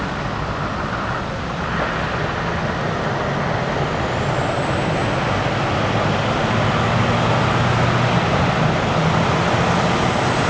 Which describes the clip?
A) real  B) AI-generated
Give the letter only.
A